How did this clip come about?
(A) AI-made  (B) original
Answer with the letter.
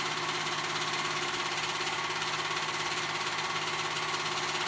B